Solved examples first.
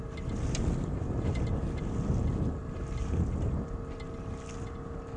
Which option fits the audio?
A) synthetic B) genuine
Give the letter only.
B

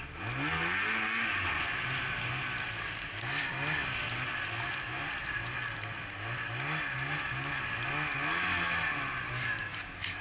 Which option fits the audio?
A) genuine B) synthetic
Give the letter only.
A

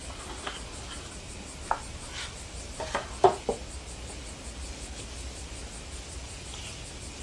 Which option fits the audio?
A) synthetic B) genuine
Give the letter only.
B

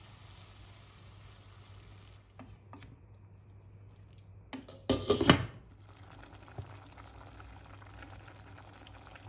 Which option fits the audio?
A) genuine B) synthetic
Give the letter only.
A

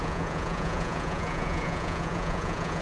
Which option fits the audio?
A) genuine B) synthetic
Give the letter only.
B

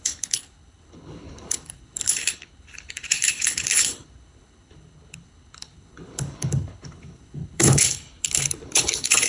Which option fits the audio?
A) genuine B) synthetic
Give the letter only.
B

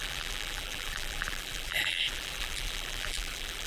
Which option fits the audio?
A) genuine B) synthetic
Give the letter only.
B